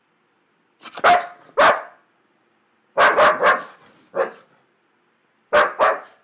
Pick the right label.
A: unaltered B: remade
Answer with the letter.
A